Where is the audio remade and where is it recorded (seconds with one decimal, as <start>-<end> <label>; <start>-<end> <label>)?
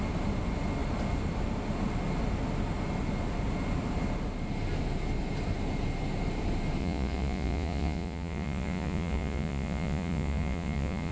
0.0-6.8 recorded; 6.8-11.1 remade